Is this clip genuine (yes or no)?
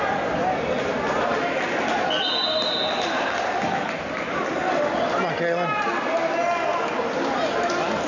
yes